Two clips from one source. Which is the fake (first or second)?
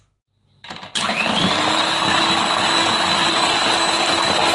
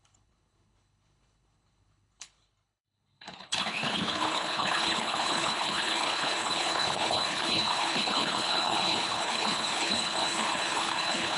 second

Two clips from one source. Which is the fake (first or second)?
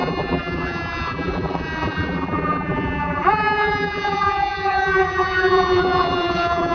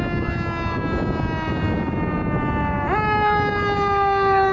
first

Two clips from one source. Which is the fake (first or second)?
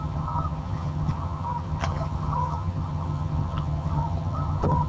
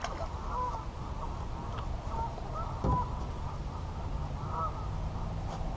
first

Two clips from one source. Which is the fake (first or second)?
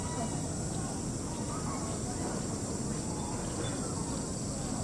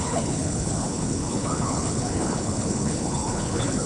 second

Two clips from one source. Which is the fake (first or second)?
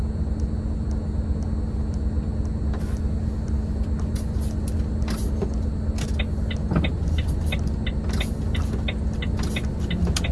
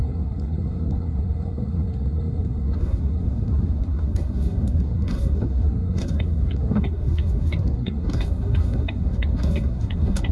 second